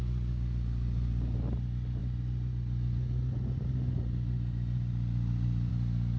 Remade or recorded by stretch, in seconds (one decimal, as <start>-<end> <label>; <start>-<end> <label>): 0.0-6.2 recorded